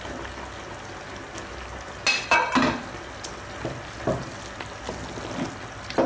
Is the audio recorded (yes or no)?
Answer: yes